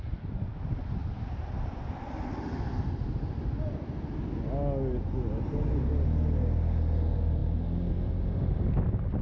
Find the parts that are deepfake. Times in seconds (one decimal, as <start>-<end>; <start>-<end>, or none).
1.0-1.9